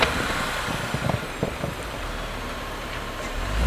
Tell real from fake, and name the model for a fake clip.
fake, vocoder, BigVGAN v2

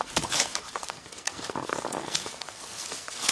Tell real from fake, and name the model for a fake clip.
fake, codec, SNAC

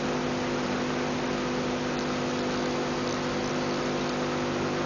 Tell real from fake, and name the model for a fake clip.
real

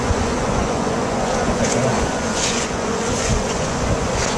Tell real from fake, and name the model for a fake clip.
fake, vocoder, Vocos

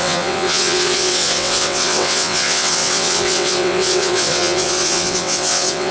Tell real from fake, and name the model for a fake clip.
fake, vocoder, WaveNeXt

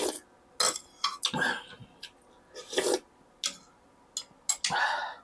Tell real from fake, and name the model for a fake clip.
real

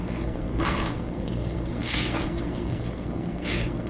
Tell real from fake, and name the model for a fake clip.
fake, codec, SNAC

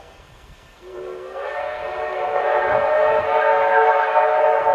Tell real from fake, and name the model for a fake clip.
fake, codec, SNAC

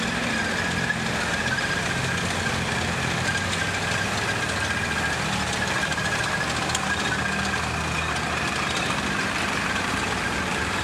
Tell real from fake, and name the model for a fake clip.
real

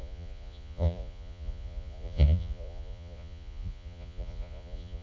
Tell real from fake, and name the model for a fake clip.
fake, vocoder, Vocos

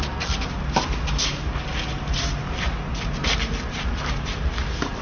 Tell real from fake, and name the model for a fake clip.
real